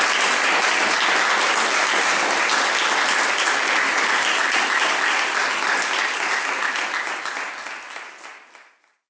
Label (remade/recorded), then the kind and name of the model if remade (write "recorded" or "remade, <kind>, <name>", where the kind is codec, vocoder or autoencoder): recorded